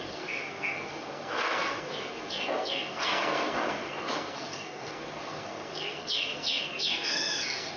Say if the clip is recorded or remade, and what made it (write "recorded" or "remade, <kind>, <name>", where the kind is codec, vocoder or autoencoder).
remade, codec, SNAC